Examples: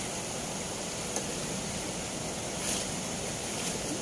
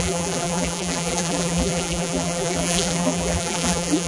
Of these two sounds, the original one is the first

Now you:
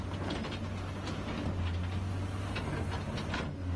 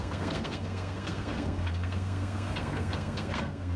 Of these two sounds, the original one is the first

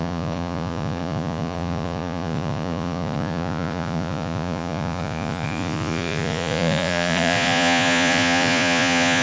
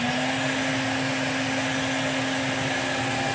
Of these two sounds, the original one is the second